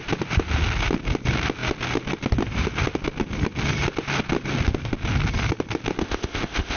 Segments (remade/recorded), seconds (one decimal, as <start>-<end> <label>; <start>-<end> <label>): 0.0-6.0 recorded; 6.0-6.8 remade